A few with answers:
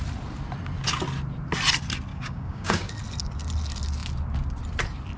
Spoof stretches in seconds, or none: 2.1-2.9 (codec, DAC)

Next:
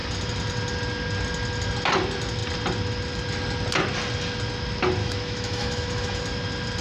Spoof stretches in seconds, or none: 5.0-6.2 (autoencoder, DAC-VAE)

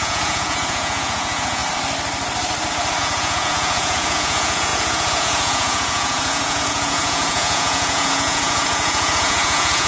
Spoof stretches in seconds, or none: 0.0-1.6 (vocoder, Vocos); 3.0-9.9

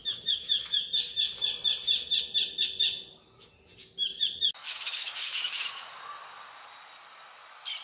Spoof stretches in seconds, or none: 0.0-0.8 (autoencoder, DAC-VAE); 4.6-5.9

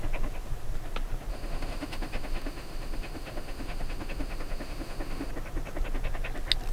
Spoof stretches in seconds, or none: 1.3-5.3 (autoencoder, DAC-VAE)

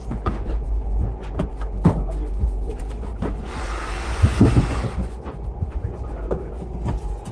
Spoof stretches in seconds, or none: 0.0-7.3 (vocoder, Vocos)

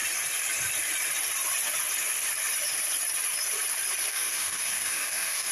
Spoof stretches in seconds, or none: 4.1-5.5 (codec, DAC)

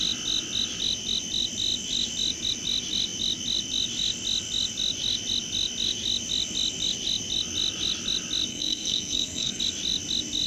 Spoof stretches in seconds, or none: 8.5-9.6 (codec, SNAC)